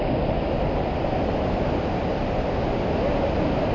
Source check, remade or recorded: recorded